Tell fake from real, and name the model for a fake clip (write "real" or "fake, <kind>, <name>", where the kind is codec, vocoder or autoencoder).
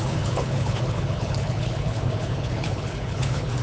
fake, codec, HILCodec